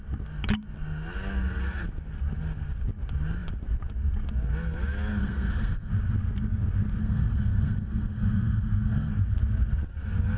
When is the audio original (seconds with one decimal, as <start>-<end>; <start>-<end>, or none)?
0.0-5.2; 5.9-7.0; 9.1-10.4